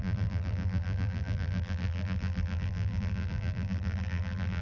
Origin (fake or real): fake